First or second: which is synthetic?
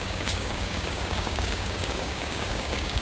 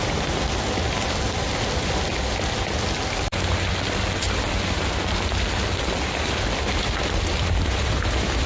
first